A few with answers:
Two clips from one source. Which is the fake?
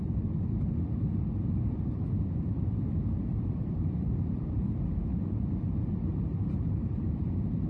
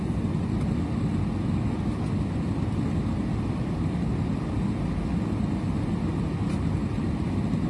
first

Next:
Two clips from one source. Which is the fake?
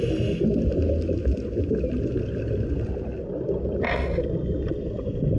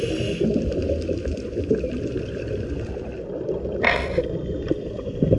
second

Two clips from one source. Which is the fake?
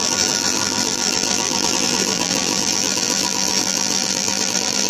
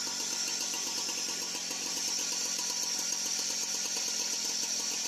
first